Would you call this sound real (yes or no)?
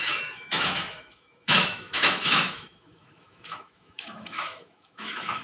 no